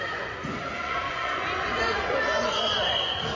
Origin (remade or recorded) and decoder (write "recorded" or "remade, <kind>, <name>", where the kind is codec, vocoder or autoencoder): remade, vocoder, Vocos